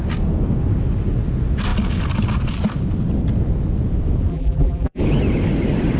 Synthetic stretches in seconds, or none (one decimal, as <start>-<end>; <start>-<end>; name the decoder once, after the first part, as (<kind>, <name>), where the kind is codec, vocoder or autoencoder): 4.3-5.0 (vocoder, BigVGAN v2)